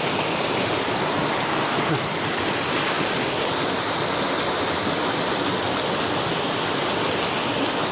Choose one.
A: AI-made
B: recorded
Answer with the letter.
B